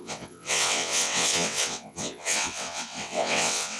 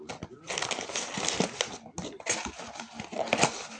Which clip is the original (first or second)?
second